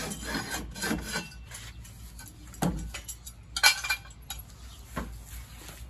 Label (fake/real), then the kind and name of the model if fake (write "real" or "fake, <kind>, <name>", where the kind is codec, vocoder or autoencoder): real